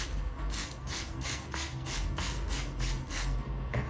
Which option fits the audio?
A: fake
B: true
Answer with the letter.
A